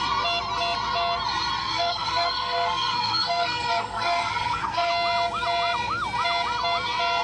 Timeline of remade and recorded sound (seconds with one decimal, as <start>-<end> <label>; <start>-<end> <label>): 0.0-1.6 recorded; 1.6-4.9 remade; 4.9-7.2 recorded